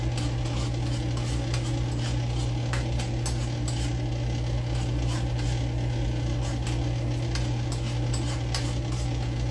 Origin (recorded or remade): recorded